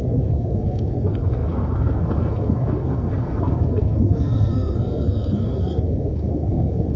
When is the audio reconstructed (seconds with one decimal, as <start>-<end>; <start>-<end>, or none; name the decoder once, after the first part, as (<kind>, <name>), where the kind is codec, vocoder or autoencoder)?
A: 0.0-7.0 (codec, SNAC)